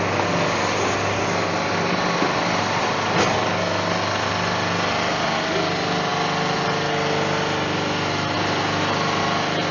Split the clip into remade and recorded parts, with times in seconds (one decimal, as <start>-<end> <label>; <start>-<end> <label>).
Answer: 0.0-9.7 recorded